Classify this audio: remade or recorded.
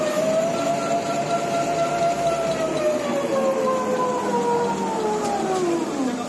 recorded